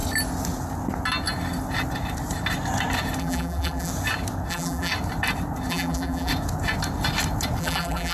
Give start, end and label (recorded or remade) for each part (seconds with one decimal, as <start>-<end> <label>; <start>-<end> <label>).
0.0-3.2 recorded; 3.2-3.9 remade; 3.9-4.5 recorded; 4.5-4.9 remade; 4.9-5.7 recorded; 5.7-6.3 remade; 6.3-7.6 recorded; 7.6-8.1 remade